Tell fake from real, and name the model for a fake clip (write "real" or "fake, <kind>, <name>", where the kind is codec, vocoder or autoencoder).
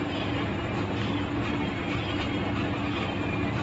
real